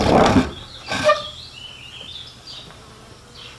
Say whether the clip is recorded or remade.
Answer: recorded